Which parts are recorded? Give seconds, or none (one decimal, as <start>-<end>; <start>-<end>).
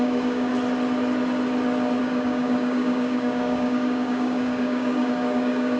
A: 0.5-2.0